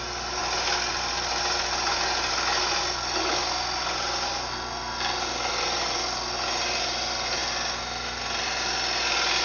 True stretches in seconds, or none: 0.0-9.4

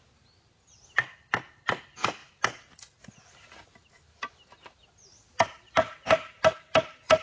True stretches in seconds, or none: 0.0-7.2

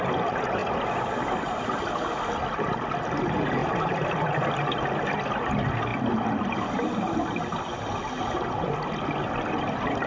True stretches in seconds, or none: 0.0-10.1

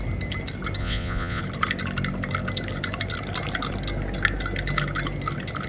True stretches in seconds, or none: 0.0-0.8; 1.4-5.7

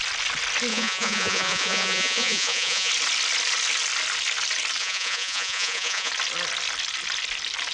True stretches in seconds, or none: 0.0-0.7; 2.9-4.8; 6.1-7.7

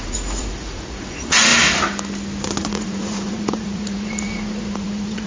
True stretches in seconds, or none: 1.5-2.6